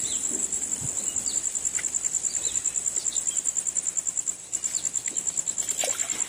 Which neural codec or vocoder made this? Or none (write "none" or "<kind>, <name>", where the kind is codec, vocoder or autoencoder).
none